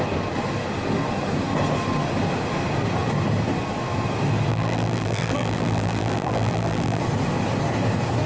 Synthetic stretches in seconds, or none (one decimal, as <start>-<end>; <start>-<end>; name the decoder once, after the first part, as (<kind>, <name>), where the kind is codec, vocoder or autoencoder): 4.5-7.0 (vocoder, BigVGAN v2)